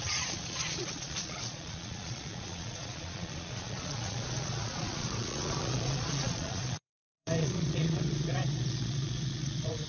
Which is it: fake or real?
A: fake